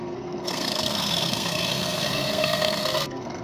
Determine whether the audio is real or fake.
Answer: fake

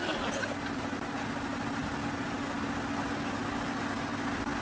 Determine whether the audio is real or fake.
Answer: real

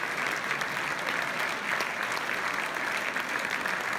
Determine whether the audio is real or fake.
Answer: real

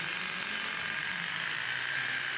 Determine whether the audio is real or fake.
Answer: real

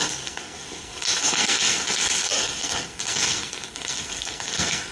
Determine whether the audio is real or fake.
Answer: fake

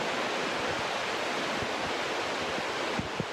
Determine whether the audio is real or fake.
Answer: real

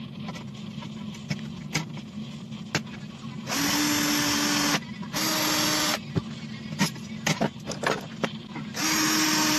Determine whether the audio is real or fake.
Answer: real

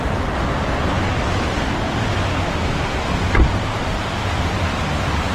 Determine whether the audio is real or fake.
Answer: real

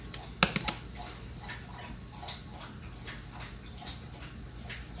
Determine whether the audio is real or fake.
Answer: real